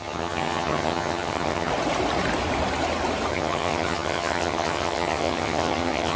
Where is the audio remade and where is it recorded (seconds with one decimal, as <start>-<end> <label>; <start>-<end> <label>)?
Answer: 0.0-1.7 remade; 1.7-3.3 recorded; 3.3-6.2 remade